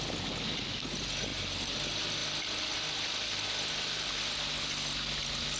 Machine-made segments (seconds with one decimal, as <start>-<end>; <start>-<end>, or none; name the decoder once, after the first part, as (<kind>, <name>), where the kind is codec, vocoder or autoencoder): 1.3-1.8 (vocoder, BigVGAN v2)